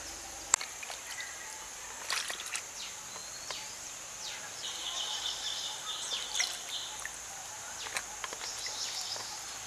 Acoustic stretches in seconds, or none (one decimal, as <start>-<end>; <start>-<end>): 0.0-3.2; 7.8-9.7